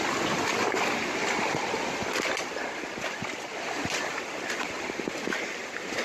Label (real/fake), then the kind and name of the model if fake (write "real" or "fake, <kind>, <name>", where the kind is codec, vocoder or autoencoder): real